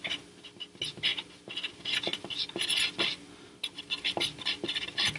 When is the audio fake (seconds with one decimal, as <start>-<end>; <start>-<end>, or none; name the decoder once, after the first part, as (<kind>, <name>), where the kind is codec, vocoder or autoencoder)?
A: none